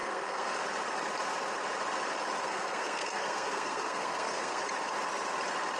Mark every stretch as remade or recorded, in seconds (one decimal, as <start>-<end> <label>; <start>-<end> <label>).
0.0-0.6 remade; 0.6-2.4 recorded; 2.4-4.6 remade; 4.6-5.8 recorded